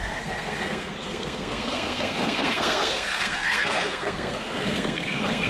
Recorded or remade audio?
remade